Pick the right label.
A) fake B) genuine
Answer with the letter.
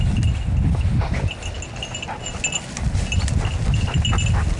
B